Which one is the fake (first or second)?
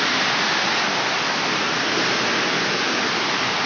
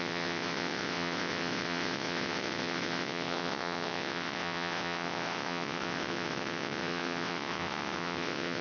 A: second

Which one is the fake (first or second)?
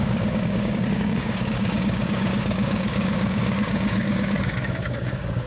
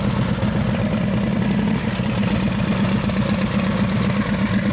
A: first